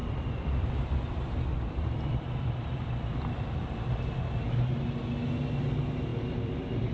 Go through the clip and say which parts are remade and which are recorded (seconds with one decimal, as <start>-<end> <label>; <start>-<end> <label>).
0.0-4.1 remade; 4.1-6.1 recorded; 6.1-6.9 remade